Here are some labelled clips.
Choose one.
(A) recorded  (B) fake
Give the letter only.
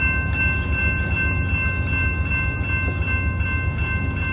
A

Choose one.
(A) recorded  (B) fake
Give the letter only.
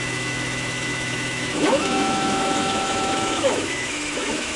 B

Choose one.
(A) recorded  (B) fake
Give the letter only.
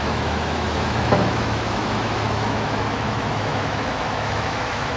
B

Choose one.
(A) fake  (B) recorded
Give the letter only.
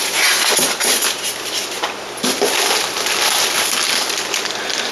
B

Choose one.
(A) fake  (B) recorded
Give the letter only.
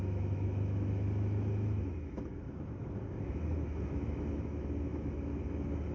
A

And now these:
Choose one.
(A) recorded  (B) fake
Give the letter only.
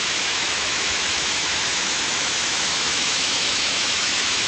B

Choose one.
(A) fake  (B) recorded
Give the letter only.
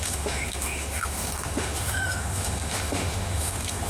A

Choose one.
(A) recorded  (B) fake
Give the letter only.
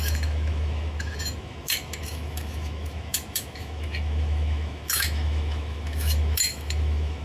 B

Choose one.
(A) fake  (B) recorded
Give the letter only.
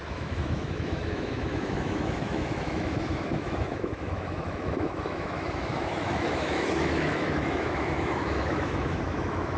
A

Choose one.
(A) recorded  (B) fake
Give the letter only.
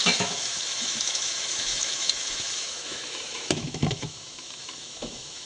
B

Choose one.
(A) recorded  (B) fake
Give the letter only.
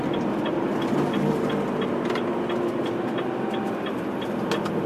A